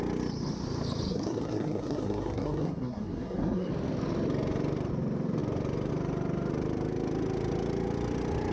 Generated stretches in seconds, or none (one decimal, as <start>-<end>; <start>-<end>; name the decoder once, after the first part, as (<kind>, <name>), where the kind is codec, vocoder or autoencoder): 1.1-3.7 (codec, SNAC)